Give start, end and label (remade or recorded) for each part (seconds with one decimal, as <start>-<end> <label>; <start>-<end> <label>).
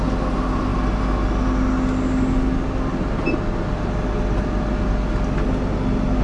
0.0-6.2 recorded